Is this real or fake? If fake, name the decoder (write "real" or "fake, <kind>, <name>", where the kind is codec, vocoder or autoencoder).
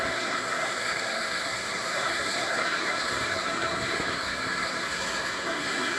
fake, codec, SNAC